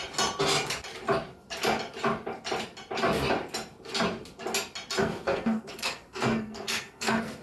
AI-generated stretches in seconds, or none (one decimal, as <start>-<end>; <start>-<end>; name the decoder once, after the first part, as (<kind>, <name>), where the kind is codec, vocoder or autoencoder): 5.0-7.4 (codec, SNAC)